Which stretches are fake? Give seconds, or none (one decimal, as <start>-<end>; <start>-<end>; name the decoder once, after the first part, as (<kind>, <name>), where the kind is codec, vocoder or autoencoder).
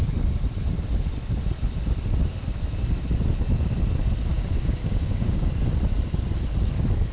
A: 4.3-5.5 (codec, DAC)